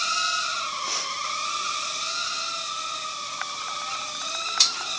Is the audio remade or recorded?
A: recorded